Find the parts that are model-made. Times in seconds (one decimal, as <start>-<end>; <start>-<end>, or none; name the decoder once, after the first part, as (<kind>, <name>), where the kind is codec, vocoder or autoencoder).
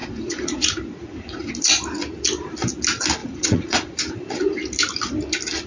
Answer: 0.0-1.5 (vocoder, Vocos); 3.2-4.0